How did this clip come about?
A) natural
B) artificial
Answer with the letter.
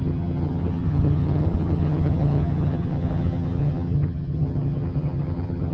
B